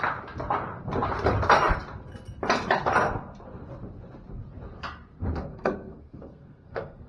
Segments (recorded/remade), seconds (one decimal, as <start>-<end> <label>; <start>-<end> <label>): 0.0-5.4 recorded; 5.4-7.1 remade